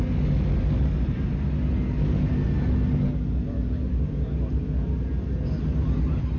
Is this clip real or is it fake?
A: real